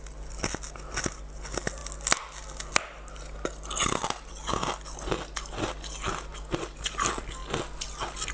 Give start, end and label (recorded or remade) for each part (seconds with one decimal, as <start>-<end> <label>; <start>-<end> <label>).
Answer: 0.0-8.3 recorded